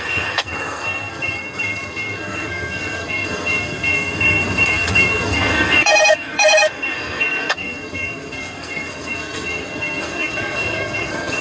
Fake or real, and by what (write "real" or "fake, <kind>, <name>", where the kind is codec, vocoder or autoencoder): fake, codec, SNAC